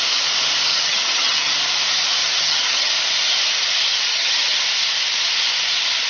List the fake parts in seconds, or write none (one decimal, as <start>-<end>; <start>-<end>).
0.7-1.5; 2.2-2.9; 4.1-4.6